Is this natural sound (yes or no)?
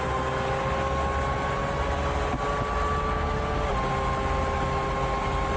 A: yes